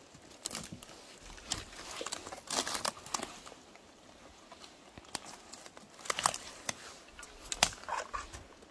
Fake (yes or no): no